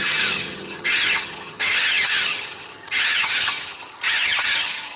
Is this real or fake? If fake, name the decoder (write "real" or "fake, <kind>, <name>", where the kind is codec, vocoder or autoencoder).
fake, vocoder, HiFi-GAN